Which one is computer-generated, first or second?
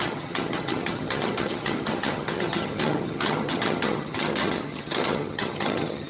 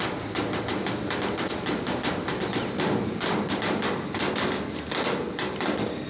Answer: first